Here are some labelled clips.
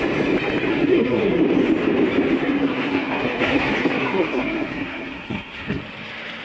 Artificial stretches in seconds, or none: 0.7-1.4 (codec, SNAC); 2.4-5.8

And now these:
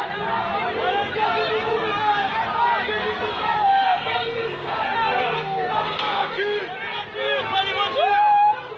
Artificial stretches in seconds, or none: 1.7-2.3 (codec, SNAC); 3.1-6.6

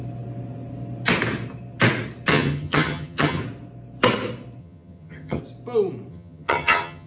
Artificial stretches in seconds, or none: 2.3-3.4 (vocoder, HiFi-GAN); 4.6-5.4; 6.1-7.1

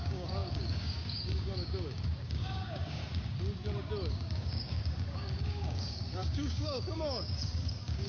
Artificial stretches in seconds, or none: 0.0-3.0 (codec, DAC); 4.1-8.1

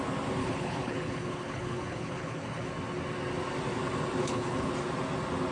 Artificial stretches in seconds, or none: 0.4-2.7 (codec, HILCodec); 4.2-4.7